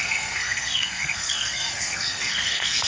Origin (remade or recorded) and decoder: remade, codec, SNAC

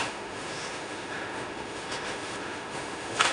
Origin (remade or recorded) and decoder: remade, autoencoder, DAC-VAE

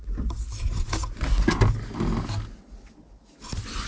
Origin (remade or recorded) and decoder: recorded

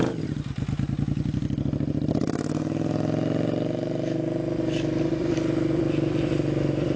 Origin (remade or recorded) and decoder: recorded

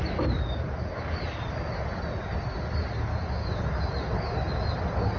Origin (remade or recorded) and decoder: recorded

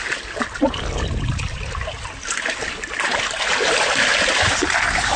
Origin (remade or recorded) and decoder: recorded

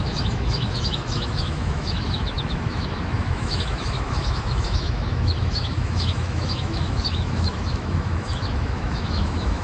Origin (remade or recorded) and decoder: remade, autoencoder, DAC-VAE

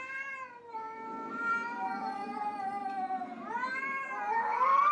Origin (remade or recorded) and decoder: remade, vocoder, BigVGAN v2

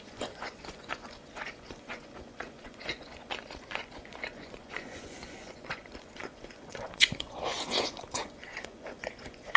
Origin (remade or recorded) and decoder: remade, vocoder, Vocos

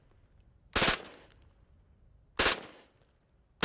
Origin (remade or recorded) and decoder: recorded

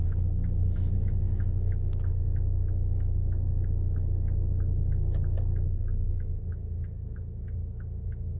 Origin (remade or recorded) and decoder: remade, autoencoder, DAC-VAE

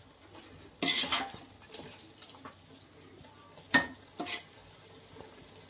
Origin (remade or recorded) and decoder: recorded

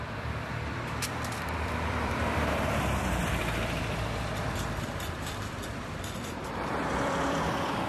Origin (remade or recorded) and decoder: remade, vocoder, BigVGAN v2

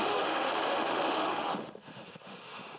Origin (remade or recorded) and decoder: remade, autoencoder, DAC-VAE